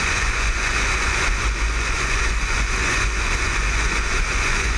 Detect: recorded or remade remade